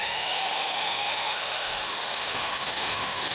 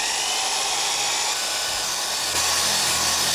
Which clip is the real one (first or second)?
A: second